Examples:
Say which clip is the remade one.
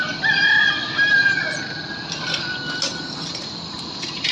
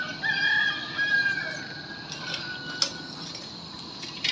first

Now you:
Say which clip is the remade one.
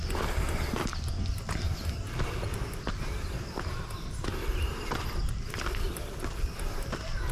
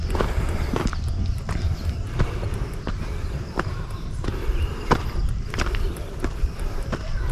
second